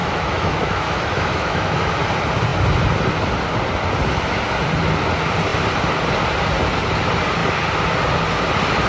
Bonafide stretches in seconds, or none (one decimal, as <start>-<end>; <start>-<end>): 1.9-8.9